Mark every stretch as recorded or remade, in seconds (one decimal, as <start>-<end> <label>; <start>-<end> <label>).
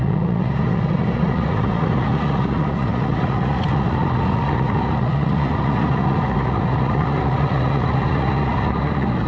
0.0-9.3 remade